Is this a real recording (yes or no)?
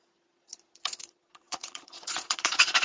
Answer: no